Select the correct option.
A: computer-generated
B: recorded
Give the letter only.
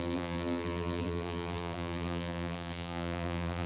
A